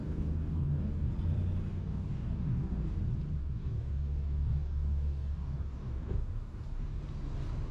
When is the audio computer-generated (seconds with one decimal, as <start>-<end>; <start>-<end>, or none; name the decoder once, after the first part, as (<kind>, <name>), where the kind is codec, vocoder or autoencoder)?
0.0-1.1 (codec, DAC); 1.7-3.0; 3.4-7.0